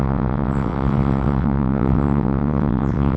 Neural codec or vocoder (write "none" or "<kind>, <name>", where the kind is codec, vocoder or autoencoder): vocoder, WaveNeXt